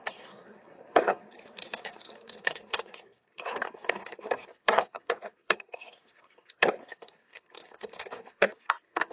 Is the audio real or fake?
fake